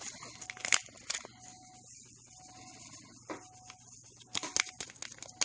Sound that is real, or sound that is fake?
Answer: real